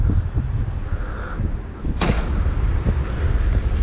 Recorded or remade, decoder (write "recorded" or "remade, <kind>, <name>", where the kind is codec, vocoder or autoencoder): recorded